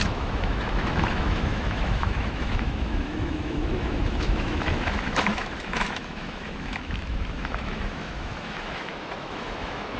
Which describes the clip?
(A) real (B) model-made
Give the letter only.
B